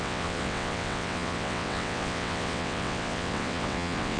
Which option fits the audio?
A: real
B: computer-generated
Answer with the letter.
B